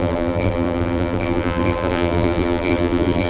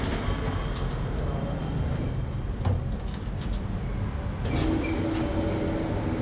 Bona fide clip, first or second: second